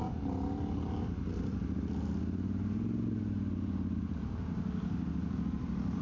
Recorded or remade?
recorded